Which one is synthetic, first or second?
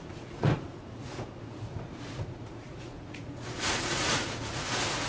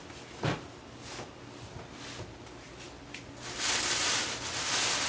first